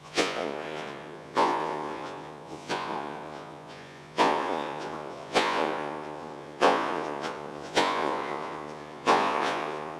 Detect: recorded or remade remade